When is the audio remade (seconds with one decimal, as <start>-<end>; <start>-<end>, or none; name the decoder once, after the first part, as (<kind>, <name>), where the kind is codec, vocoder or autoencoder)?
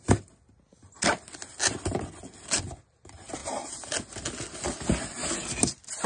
none